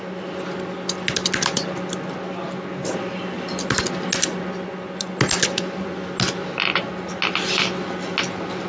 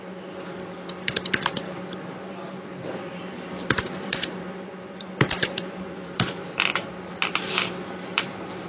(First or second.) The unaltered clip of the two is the first